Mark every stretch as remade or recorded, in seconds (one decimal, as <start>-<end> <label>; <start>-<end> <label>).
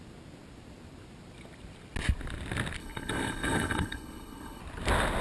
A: 0.0-2.8 recorded; 2.8-4.6 remade; 4.6-5.2 recorded